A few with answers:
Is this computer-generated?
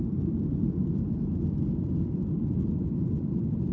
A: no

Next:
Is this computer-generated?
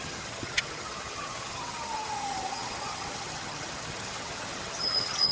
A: yes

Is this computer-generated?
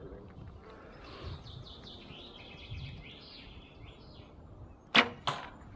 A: no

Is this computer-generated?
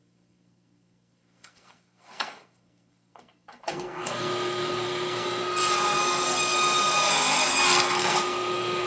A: yes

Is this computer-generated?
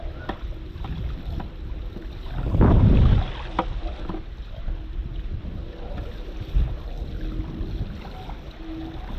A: no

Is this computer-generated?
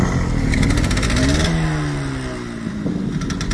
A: no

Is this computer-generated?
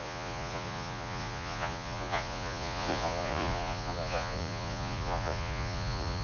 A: yes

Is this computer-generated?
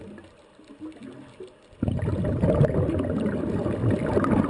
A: no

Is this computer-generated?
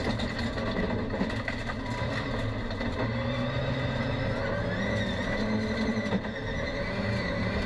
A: no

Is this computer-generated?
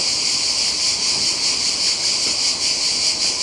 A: no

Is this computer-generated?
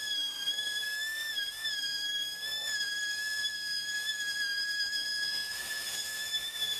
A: yes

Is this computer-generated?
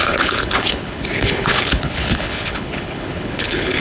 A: yes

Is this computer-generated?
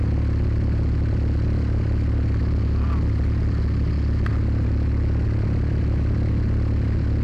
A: no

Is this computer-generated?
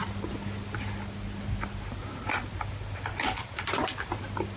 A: no